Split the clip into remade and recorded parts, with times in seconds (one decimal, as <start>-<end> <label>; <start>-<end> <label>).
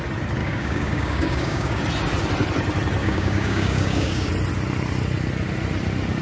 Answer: 0.0-0.4 recorded; 0.4-1.8 remade; 1.8-3.0 recorded; 3.0-4.3 remade; 4.3-6.2 recorded